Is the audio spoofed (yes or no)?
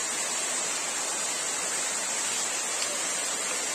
no